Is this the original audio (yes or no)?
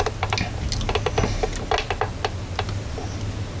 yes